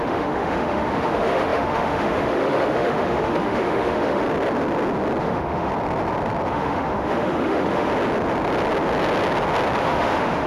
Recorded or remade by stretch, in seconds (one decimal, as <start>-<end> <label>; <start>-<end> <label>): 0.0-4.2 remade; 4.2-5.2 recorded; 5.2-5.7 remade; 5.7-6.5 recorded; 6.5-7.9 remade; 7.9-9.8 recorded; 9.8-10.5 remade